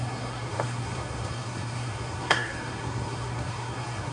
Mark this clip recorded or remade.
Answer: remade